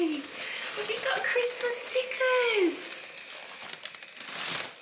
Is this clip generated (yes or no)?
no